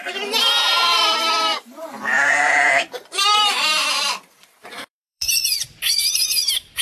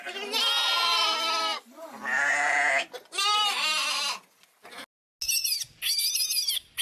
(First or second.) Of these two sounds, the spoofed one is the first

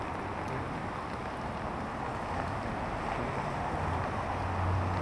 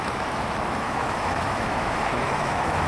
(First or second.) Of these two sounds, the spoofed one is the second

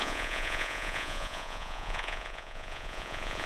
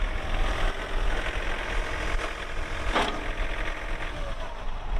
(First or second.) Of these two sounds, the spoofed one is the first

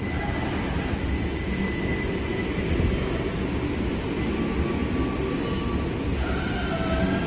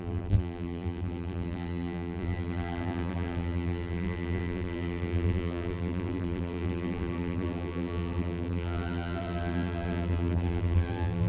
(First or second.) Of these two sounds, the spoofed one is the second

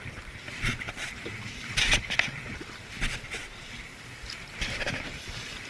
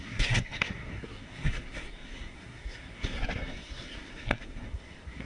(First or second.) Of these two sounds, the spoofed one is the second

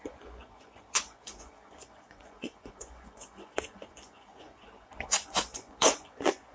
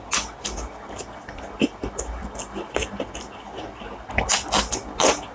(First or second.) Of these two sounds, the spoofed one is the first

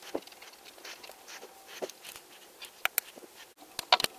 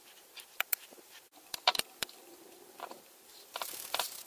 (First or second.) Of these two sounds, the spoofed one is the second